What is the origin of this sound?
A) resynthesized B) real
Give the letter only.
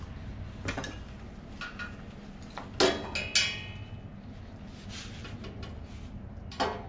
B